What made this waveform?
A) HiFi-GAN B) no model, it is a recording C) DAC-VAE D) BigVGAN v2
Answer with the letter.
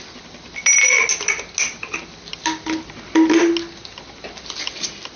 B